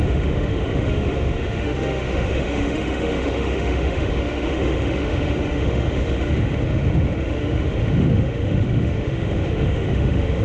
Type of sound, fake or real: fake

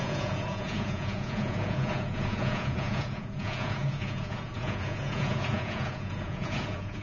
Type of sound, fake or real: fake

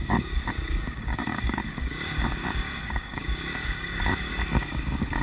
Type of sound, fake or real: fake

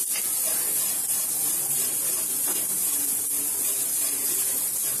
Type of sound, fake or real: real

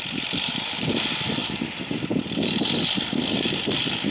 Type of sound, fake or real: real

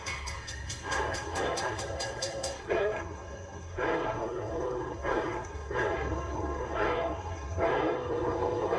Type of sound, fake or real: fake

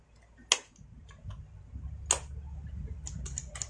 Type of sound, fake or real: real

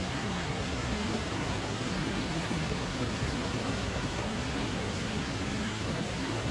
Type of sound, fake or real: fake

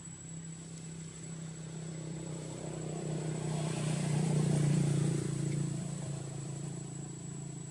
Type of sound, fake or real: fake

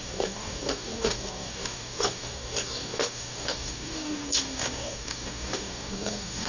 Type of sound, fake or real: fake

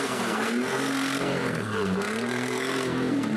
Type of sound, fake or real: fake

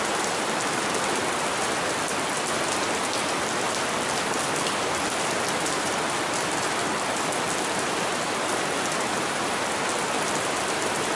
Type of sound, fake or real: real